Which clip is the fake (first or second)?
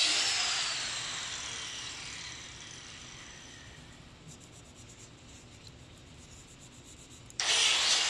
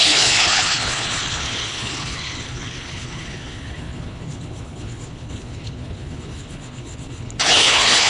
second